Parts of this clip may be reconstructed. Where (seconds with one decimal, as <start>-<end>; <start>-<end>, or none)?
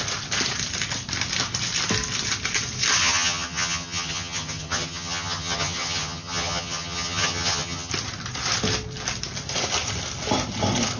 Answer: 3.0-7.9